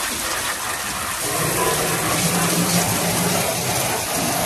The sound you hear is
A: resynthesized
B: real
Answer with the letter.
B